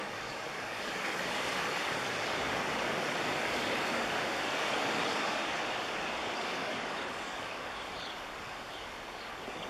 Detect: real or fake fake